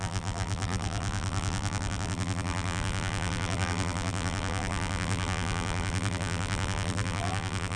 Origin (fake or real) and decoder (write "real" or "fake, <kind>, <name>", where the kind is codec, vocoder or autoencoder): fake, vocoder, BigVGAN v2